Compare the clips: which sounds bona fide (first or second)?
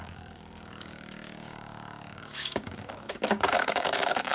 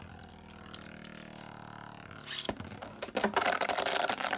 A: second